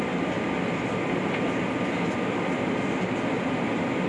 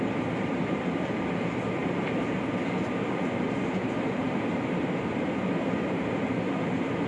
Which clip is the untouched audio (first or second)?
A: first